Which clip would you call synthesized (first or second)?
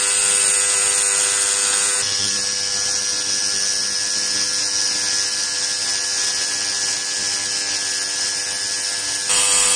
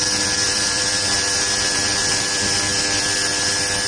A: second